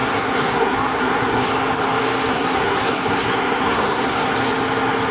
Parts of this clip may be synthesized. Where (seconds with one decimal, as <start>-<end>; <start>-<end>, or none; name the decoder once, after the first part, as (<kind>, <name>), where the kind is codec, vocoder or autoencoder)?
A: 0.0-1.5 (codec, SNAC); 2.3-4.3